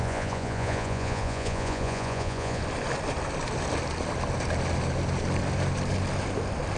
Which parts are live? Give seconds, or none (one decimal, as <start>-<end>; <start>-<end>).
2.6-6.8